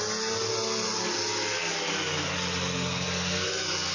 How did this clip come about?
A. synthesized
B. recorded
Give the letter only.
B